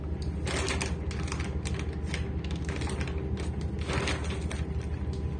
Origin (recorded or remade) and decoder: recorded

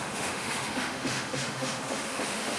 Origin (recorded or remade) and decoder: remade, autoencoder, DAC-VAE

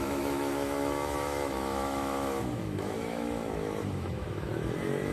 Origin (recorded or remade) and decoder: remade, autoencoder, DAC-VAE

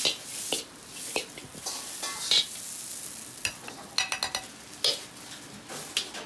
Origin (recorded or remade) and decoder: recorded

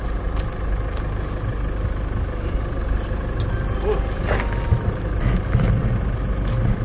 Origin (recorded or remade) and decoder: recorded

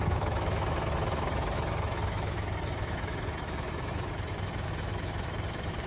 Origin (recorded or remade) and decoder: remade, autoencoder, DAC-VAE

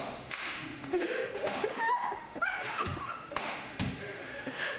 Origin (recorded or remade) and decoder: remade, autoencoder, DAC-VAE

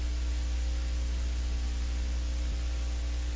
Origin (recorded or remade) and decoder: recorded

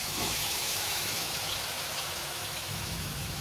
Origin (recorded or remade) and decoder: remade, autoencoder, DAC-VAE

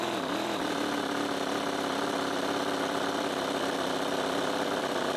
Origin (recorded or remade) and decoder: recorded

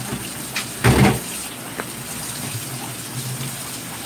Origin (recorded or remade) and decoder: recorded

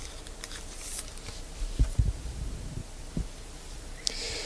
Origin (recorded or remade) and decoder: recorded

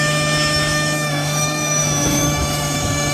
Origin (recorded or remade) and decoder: remade, autoencoder, DAC-VAE